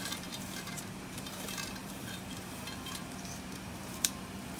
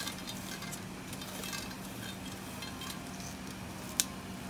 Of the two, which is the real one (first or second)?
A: second